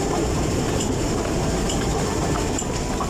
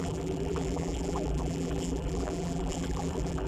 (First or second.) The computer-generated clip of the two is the second